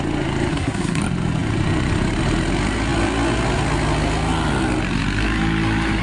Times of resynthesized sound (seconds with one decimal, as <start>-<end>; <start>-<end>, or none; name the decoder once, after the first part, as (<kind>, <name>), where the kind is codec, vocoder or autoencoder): 0.5-1.0 (codec, SNAC)